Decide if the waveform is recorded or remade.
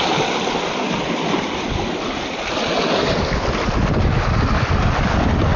recorded